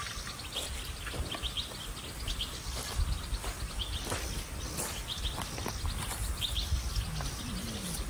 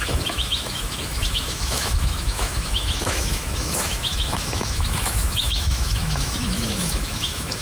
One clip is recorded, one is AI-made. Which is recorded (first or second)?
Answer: first